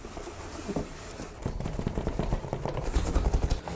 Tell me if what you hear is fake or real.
real